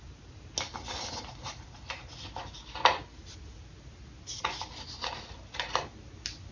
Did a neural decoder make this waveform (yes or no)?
no